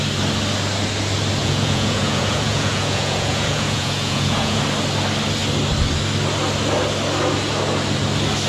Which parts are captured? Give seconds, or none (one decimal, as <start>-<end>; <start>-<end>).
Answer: 0.0-1.4; 4.6-8.5